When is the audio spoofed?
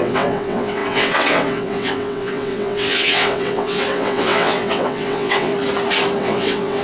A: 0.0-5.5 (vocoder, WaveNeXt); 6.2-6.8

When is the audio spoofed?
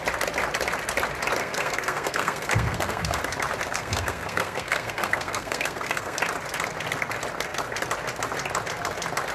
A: 1.4-3.2 (codec, SNAC); 3.7-6.2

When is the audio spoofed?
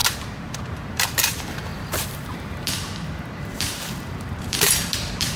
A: 0.0-5.4 (vocoder, BigVGAN v2)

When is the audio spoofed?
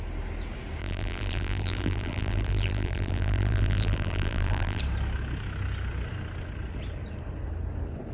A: 0.8-4.8 (vocoder, BigVGAN v2)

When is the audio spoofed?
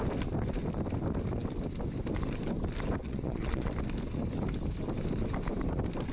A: 3.0-3.7 (vocoder, Vocos)